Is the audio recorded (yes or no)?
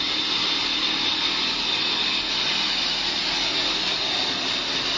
yes